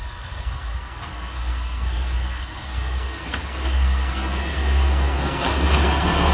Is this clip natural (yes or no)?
no